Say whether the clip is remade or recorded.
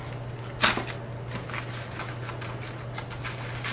recorded